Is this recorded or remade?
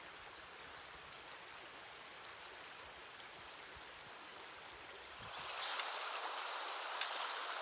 recorded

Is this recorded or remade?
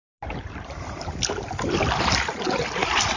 recorded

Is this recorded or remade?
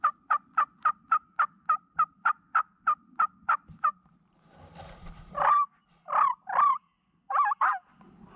remade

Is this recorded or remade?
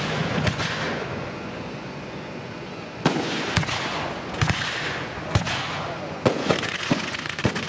remade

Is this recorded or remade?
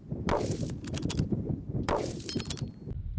remade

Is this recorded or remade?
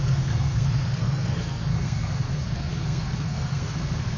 remade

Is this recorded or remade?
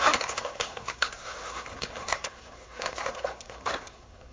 remade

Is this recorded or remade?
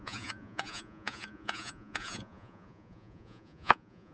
remade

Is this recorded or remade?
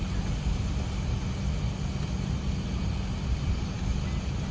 recorded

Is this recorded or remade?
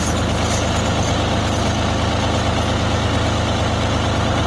recorded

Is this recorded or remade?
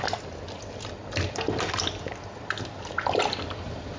recorded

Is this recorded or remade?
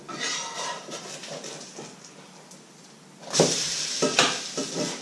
recorded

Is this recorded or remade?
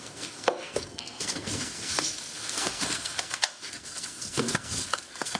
remade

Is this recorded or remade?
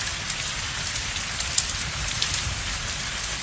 recorded